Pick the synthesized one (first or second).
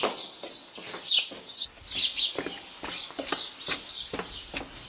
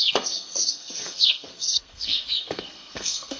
second